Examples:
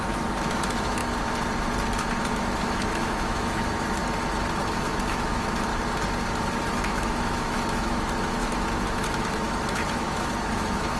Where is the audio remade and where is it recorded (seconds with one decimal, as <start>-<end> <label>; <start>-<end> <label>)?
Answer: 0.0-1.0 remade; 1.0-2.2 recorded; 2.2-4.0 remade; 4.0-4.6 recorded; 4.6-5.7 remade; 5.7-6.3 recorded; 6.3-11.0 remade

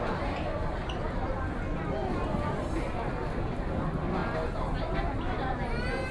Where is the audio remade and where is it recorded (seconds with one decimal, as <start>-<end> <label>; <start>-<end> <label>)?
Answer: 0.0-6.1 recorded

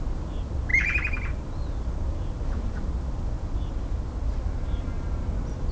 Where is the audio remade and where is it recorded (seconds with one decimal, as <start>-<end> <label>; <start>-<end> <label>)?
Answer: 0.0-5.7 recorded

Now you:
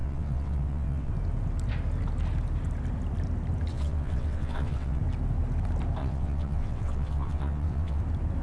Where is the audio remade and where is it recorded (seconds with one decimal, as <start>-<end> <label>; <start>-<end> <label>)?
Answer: 0.0-1.1 remade; 1.1-3.7 recorded; 3.7-5.0 remade; 5.0-6.0 recorded; 6.0-8.0 remade; 8.0-8.4 recorded

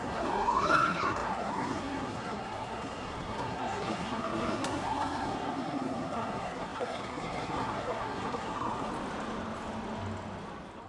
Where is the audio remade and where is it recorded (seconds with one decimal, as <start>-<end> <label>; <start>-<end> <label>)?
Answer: 0.0-8.9 remade; 8.9-10.9 recorded